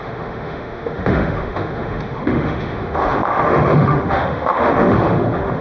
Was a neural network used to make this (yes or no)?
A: yes